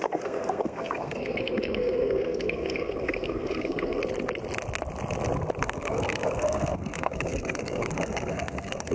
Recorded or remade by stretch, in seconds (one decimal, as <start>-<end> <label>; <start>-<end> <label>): 0.0-4.0 remade; 4.0-5.6 recorded; 5.6-8.9 remade